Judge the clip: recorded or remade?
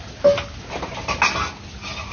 recorded